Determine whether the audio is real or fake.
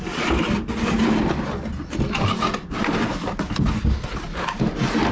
real